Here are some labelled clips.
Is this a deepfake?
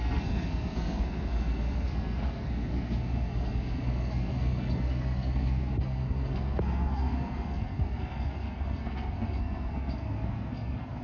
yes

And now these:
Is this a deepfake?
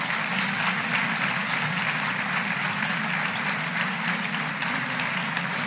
no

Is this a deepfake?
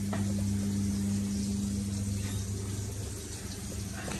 no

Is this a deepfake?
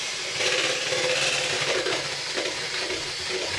no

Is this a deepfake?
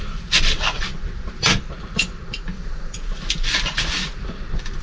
yes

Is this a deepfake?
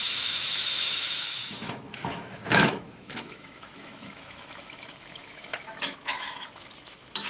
yes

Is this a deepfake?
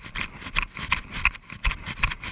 no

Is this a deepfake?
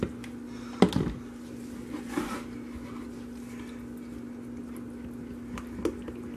no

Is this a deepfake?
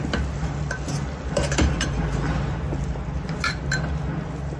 no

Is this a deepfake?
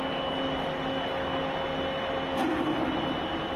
no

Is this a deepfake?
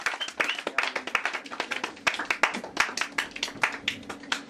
no